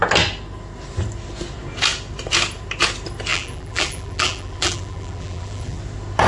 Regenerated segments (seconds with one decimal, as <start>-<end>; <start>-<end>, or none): 3.3-5.8